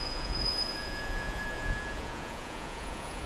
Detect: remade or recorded remade